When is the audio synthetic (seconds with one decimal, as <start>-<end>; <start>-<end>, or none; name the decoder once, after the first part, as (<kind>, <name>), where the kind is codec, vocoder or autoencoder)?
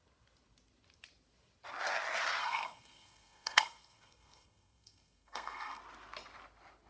2.4-5.8 (codec, SNAC)